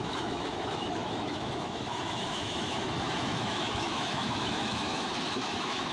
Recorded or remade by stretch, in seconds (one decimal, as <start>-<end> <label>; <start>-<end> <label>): 0.0-5.9 remade